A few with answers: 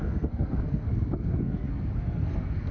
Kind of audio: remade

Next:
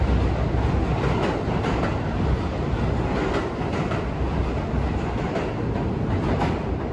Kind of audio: recorded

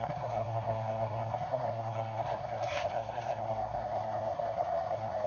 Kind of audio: remade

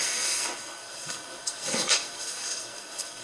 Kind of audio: remade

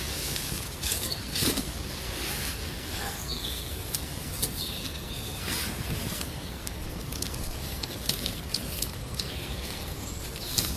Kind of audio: remade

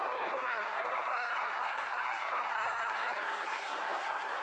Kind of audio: remade